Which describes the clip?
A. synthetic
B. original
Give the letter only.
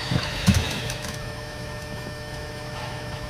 A